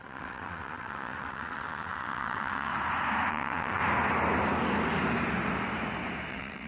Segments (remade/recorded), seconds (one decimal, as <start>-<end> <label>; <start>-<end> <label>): 0.0-2.7 remade; 2.7-3.3 recorded; 3.3-3.8 remade; 3.8-6.3 recorded; 6.3-6.7 remade